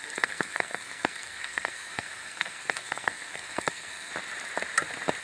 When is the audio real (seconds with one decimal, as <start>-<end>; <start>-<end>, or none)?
4.1-5.2